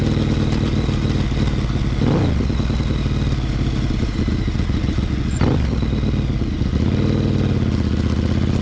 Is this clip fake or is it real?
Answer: real